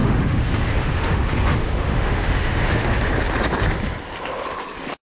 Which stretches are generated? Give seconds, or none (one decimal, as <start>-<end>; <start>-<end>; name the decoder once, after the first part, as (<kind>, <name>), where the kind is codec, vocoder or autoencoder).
0.0-3.1 (autoencoder, DAC-VAE)